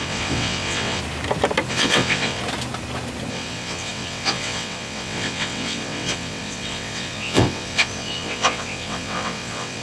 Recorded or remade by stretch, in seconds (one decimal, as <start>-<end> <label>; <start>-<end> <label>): 0.0-1.0 remade; 1.0-1.7 recorded; 1.7-2.4 remade; 2.4-3.3 recorded; 3.3-9.8 remade